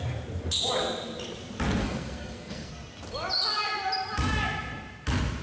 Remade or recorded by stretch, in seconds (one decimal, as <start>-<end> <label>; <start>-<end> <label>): 0.0-1.8 recorded; 1.8-2.7 remade; 2.7-5.4 recorded